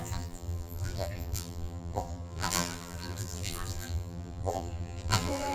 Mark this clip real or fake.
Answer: fake